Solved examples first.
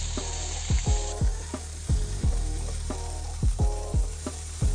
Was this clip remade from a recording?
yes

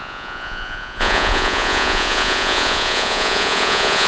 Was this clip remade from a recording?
yes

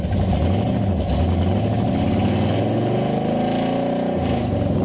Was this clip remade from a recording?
no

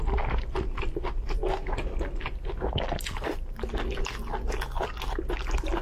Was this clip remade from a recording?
no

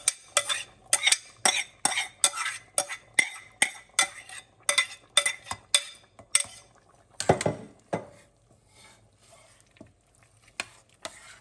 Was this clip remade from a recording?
no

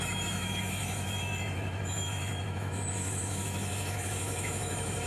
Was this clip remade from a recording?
yes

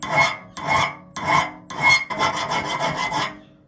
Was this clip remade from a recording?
no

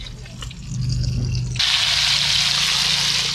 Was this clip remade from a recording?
no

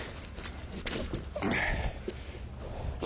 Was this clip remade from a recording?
no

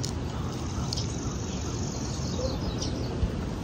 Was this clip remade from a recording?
no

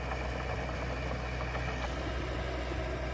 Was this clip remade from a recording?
no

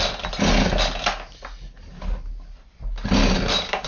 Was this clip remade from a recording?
no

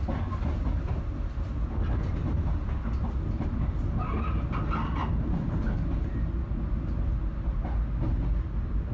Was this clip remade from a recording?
no